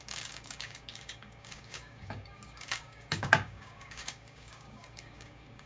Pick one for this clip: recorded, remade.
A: remade